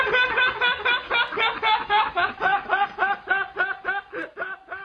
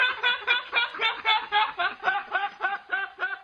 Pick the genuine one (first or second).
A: first